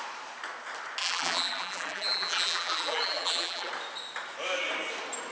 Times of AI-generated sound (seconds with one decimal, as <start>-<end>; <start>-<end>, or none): 1.0-3.7